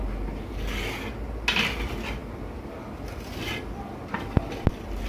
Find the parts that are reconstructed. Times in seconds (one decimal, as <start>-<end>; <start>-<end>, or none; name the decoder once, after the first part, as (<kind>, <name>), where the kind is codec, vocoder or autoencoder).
none